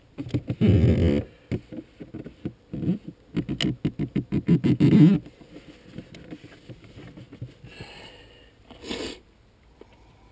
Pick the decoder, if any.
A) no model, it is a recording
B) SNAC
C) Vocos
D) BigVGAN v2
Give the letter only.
A